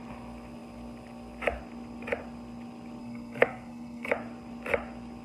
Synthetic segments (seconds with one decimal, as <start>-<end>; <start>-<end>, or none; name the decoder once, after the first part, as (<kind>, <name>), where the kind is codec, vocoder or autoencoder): 3.0-4.1 (codec, SNAC)